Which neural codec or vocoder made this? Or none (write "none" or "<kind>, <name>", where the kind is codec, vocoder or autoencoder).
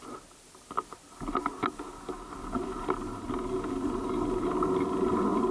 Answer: none